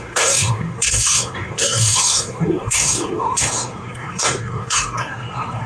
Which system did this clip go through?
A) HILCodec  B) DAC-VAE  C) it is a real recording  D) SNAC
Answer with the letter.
D